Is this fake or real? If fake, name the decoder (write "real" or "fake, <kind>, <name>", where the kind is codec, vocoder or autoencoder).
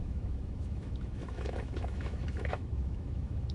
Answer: fake, autoencoder, DAC-VAE